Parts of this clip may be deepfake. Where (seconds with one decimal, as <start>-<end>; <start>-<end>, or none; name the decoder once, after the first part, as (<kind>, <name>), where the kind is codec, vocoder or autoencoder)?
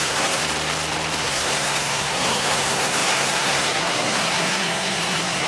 0.0-0.4 (codec, SNAC); 1.2-5.5